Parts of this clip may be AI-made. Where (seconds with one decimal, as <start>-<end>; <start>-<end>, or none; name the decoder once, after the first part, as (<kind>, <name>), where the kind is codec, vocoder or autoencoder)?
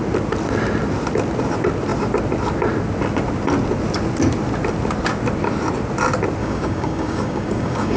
6.4-8.0 (codec, DAC)